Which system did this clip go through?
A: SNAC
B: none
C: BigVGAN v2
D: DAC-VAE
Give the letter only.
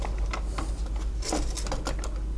B